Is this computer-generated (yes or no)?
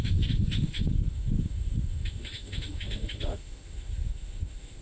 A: yes